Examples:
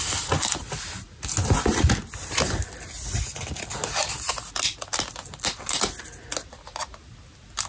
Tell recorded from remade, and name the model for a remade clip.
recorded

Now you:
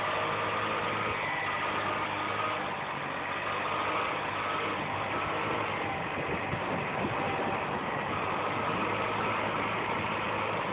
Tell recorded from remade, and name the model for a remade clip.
recorded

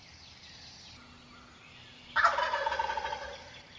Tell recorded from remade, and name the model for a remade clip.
recorded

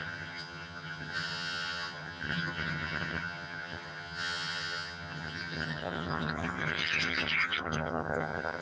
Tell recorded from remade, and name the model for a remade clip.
remade, vocoder, HiFi-GAN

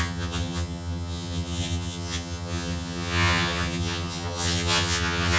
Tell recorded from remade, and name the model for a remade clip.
remade, vocoder, HiFi-GAN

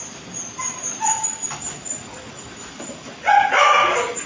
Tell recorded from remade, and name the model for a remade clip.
recorded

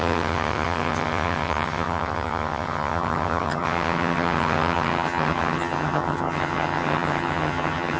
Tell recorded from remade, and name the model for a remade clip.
remade, vocoder, HiFi-GAN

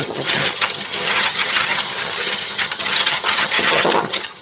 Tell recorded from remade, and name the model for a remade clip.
remade, vocoder, HiFi-GAN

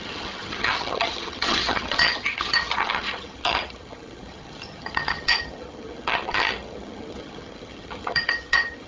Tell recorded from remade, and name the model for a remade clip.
remade, vocoder, HiFi-GAN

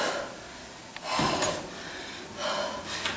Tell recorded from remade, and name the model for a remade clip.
recorded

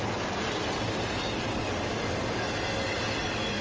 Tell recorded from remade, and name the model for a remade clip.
recorded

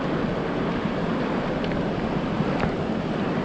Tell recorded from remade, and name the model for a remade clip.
recorded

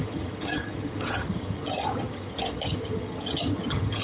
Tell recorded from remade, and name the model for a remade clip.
remade, vocoder, HiFi-GAN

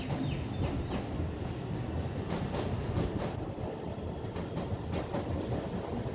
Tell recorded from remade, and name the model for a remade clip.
recorded